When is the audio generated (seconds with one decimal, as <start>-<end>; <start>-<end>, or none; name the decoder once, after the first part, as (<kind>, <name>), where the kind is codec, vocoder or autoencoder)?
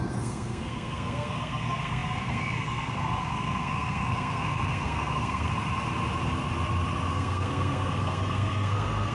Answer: 0.0-5.5 (codec, SNAC); 7.1-9.1